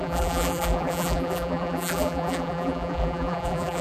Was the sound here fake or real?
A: fake